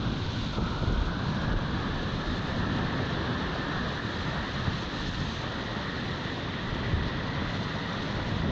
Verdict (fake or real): real